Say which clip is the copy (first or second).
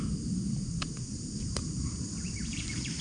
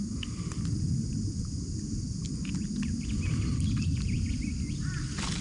first